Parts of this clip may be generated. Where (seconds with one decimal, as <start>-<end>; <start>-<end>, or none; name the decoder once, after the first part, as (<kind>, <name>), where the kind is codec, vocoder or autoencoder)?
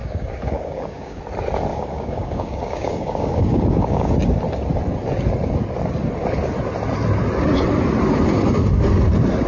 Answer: 0.0-1.2 (codec, DAC); 1.7-4.1